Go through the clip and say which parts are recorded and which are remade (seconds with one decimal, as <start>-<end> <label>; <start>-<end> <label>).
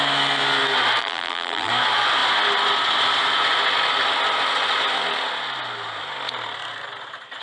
0.0-1.0 recorded; 1.0-1.7 remade; 1.7-7.4 recorded